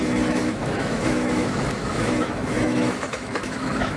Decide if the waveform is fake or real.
fake